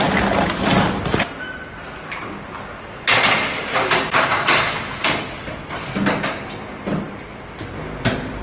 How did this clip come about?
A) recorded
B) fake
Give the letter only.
A